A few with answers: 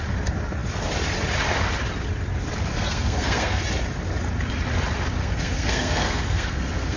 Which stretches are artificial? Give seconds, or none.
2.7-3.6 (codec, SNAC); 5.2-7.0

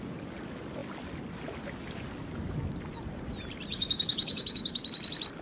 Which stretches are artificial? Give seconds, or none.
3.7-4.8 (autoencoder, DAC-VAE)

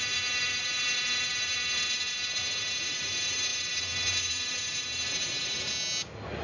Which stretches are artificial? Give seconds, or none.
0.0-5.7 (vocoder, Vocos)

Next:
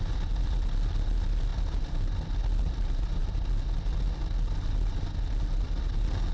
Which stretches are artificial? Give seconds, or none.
none

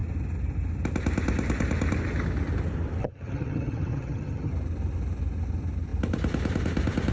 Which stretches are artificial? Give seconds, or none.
3.0-4.5 (vocoder, HiFi-GAN)

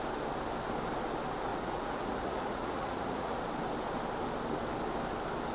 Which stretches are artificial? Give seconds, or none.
1.5-3.4 (vocoder, Vocos)